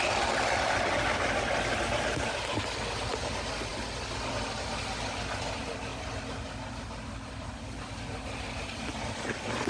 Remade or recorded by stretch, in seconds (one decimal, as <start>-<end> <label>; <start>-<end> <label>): 0.0-9.7 recorded